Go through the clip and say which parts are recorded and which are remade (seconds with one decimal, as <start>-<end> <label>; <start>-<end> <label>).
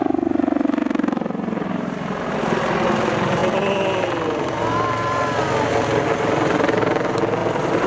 0.0-0.8 recorded; 0.8-2.3 remade; 2.3-7.4 recorded; 7.4-7.9 remade